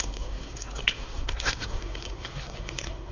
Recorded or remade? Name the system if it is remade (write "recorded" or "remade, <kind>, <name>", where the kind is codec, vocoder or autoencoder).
remade, codec, SNAC